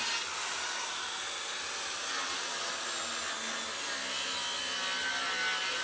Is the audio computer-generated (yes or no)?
no